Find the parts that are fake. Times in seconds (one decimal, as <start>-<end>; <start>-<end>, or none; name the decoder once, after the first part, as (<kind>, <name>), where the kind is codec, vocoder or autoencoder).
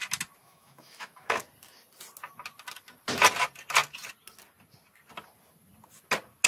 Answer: 0.4-1.4 (autoencoder, DAC-VAE)